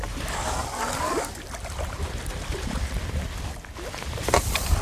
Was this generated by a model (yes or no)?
yes